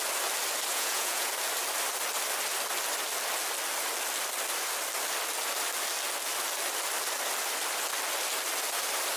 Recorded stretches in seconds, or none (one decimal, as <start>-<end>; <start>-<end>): 0.0-0.7; 1.3-9.2